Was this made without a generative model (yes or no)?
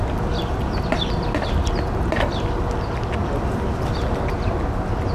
yes